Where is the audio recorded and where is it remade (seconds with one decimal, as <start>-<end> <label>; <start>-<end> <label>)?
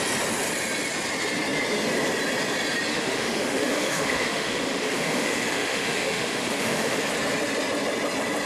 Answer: 0.0-2.9 recorded; 2.9-7.0 remade; 7.0-8.5 recorded